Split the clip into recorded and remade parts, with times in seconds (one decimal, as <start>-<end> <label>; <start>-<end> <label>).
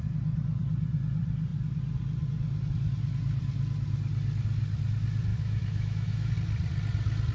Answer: 0.0-5.3 recorded; 5.3-6.3 remade; 6.3-7.3 recorded